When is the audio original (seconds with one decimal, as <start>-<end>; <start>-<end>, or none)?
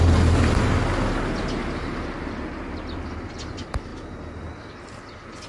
0.0-5.5